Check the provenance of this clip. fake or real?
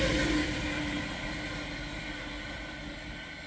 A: real